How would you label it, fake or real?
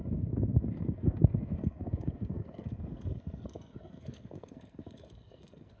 fake